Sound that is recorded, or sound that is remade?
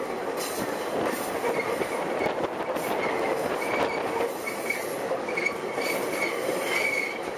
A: recorded